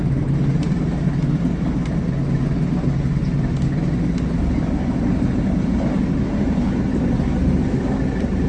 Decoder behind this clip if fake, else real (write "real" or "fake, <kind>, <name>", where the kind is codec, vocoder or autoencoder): real